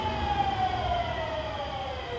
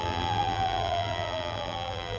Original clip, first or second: first